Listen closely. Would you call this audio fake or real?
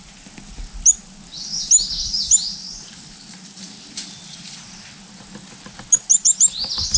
real